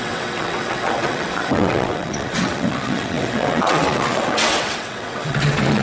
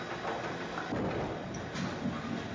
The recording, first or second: second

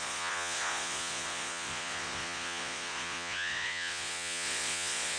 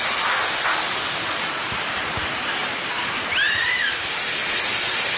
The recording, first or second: second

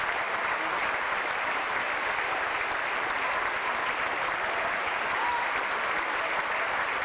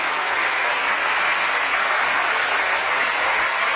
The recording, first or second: first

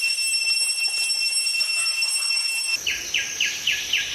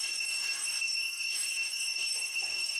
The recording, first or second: first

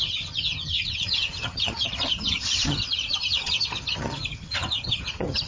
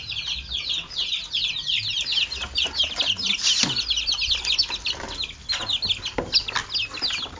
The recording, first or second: second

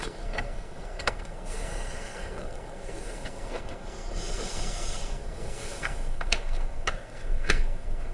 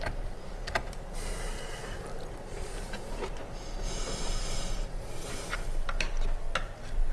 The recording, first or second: second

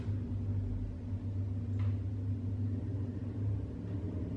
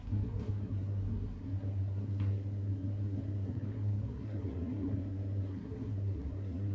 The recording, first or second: first